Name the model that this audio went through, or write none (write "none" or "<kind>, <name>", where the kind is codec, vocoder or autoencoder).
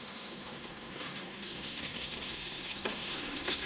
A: codec, SNAC